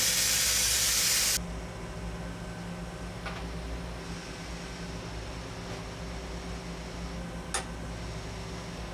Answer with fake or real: real